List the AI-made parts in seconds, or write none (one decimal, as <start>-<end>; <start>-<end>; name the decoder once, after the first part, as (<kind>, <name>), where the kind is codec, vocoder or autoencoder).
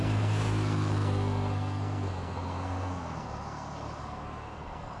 0.0-5.0 (codec, SNAC)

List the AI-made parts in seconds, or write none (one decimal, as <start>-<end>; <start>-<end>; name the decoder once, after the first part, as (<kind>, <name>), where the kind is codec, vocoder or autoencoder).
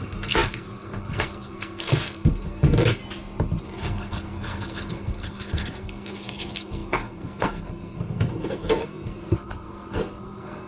0.0-3.0 (codec, SNAC); 3.6-10.7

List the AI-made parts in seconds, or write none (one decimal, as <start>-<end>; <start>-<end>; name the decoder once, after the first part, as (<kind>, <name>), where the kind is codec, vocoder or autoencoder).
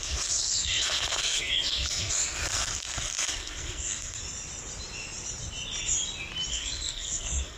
0.0-4.2 (codec, SNAC); 6.5-7.6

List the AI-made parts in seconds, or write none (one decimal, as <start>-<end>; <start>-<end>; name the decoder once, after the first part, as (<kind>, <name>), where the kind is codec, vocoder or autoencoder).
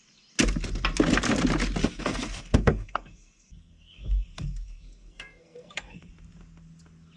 1.8-6.1 (codec, SNAC)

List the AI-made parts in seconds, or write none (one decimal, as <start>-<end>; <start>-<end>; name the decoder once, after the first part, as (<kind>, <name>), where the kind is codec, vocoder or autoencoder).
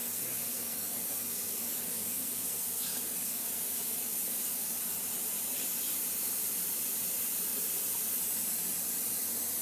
0.0-4.8 (codec, SNAC)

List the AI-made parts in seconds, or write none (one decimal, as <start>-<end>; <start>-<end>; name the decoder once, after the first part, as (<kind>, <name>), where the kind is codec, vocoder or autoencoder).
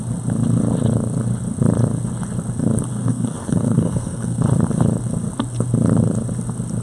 2.9-4.4 (codec, SNAC)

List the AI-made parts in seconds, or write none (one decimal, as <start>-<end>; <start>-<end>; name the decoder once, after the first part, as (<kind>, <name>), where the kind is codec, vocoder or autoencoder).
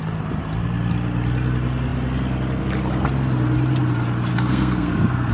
4.3-5.3 (codec, SNAC)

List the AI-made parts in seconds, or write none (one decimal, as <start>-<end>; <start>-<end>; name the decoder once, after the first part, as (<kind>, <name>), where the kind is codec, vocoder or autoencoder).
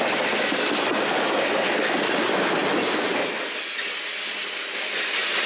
none